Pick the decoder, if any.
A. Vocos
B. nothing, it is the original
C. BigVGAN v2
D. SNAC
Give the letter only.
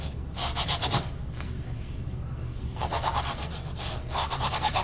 D